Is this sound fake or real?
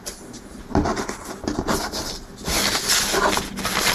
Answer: real